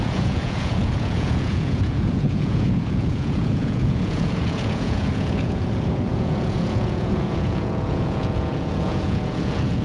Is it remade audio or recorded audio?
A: remade